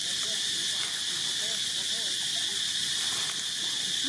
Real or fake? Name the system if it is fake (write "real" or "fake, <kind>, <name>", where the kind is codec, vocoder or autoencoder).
real